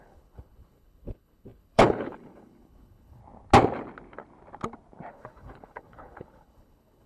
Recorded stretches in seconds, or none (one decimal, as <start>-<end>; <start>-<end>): 3.2-5.1

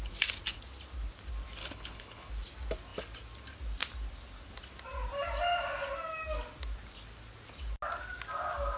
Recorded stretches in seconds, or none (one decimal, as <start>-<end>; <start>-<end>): 0.0-1.6; 2.3-8.8

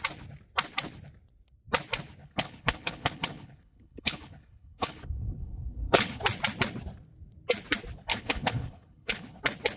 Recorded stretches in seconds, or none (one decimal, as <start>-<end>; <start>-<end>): 0.0-2.2; 6.2-8.1; 9.4-9.8

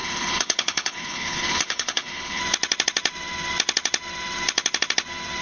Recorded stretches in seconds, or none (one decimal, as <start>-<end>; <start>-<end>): 2.4-5.4

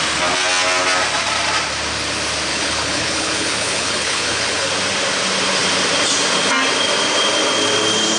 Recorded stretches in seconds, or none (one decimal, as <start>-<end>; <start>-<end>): 0.0-2.5; 4.7-8.2

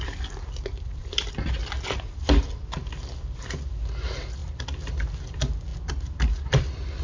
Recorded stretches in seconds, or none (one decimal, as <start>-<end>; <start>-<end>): 0.0-7.0

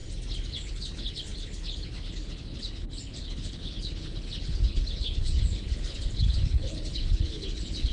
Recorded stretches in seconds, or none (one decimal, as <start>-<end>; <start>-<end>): 0.0-0.5

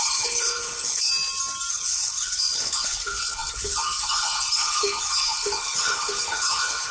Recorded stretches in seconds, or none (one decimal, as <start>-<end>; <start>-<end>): 1.1-1.7